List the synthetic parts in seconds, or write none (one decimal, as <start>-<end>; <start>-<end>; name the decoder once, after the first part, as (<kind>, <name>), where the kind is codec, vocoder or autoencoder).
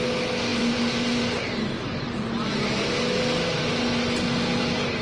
none